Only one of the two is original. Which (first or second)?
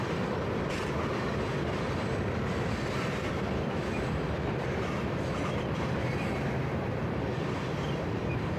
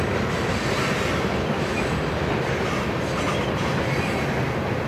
second